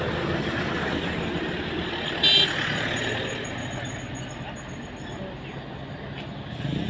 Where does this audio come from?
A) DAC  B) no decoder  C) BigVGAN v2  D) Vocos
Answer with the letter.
B